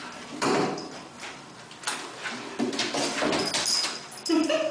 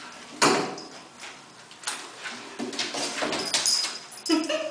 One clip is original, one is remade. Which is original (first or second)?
second